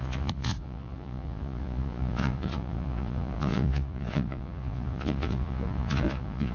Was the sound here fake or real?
fake